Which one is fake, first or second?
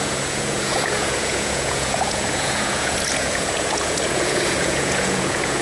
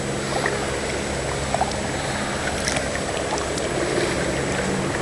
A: first